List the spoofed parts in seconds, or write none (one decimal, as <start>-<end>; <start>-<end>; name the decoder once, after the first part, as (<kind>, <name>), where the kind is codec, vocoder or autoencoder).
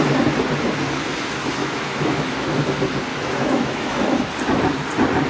1.6-2.6 (autoencoder, DAC-VAE); 3.1-4.3